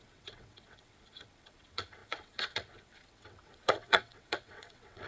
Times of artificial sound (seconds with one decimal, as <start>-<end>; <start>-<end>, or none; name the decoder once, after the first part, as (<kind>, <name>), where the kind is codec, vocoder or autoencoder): 0.0-5.1 (vocoder, WaveNeXt)